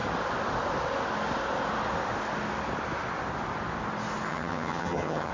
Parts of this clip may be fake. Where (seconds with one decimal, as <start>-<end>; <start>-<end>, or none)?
4.3-5.3